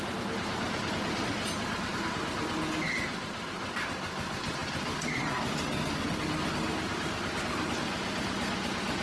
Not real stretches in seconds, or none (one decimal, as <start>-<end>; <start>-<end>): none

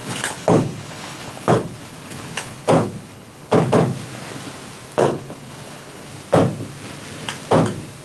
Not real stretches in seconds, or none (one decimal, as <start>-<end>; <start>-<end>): 0.0-3.5; 5.0-6.1

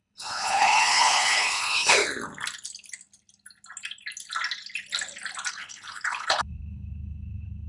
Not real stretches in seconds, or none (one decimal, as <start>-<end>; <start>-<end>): 0.0-2.0; 5.5-7.7

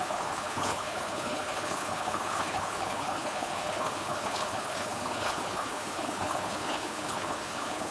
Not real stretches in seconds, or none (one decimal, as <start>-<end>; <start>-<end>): 0.0-7.9